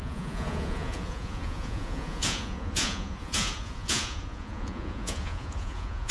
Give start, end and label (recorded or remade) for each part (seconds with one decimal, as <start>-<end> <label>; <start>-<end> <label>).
0.0-6.1 remade

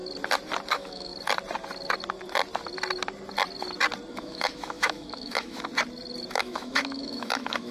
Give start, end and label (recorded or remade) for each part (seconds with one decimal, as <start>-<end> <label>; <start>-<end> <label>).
0.0-0.7 recorded; 0.7-1.1 remade; 1.1-4.1 recorded; 4.1-5.7 remade; 5.7-6.3 recorded; 6.3-7.7 remade